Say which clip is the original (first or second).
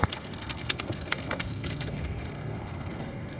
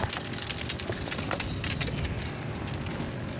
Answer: second